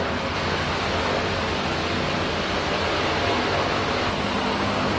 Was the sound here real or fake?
real